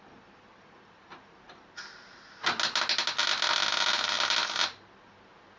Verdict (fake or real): real